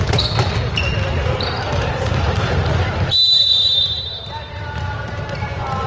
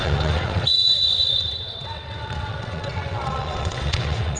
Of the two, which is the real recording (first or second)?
first